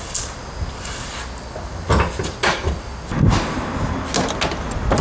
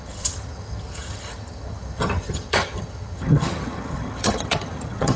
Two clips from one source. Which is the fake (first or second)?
second